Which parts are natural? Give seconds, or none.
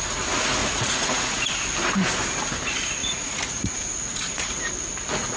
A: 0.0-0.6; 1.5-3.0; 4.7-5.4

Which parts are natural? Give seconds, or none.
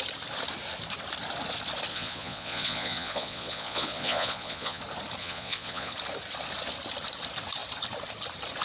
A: 0.0-1.9; 4.8-5.2; 5.9-8.6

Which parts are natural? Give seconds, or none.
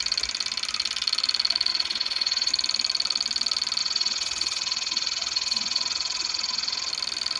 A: 0.0-1.7; 2.5-3.8; 6.9-7.4